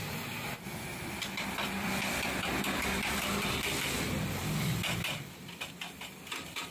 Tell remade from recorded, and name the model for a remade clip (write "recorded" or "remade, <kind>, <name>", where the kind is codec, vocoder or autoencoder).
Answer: recorded